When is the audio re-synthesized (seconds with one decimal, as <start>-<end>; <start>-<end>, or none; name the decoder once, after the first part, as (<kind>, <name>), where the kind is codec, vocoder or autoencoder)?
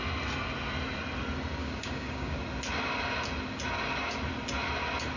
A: 1.6-2.4 (codec, DAC)